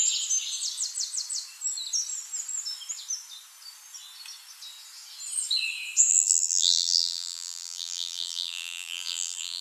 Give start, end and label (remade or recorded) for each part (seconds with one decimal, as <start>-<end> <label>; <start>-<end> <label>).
0.0-6.1 recorded; 6.1-9.6 remade